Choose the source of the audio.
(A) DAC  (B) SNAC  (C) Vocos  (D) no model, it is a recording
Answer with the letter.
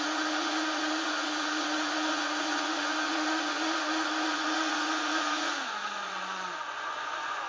C